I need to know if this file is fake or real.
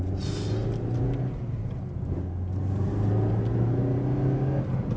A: real